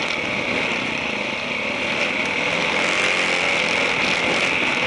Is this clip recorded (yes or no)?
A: yes